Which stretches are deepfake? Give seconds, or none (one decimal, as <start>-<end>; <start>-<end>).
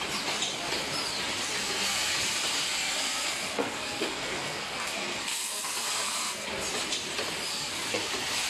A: 1.6-2.2; 2.6-6.5; 7.5-8.1